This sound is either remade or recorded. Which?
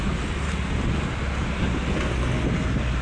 recorded